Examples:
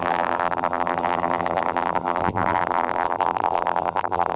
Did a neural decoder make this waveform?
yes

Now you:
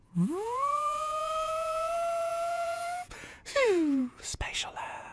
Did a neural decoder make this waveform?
yes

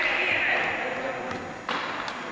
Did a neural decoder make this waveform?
no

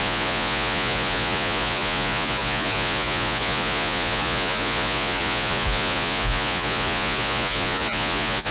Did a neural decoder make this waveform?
yes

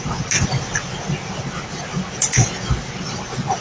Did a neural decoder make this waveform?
no